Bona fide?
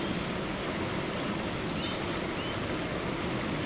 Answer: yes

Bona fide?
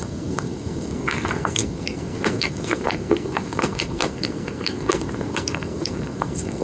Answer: no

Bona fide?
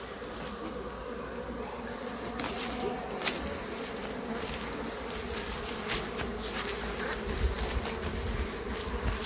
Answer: yes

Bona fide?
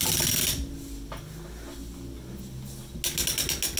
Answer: yes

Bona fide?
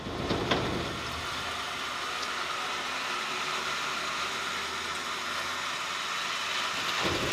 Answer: yes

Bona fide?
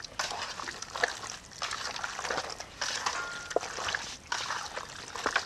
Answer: yes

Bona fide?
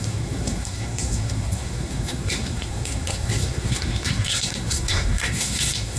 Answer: no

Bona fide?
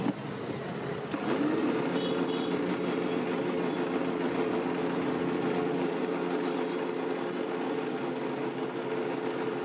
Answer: yes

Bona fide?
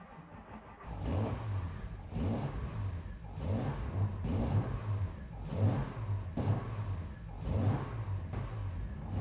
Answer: yes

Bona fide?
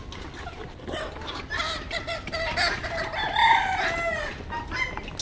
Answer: yes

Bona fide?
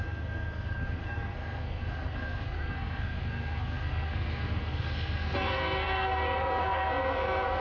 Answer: no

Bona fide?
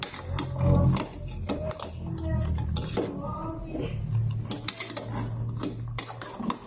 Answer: yes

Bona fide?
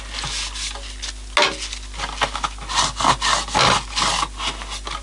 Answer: yes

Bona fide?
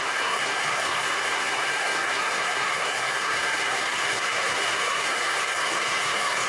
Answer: no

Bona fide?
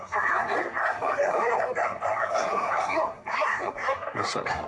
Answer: no